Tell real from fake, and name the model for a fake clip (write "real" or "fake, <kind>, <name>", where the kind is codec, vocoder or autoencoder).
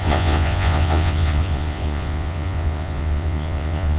fake, vocoder, Vocos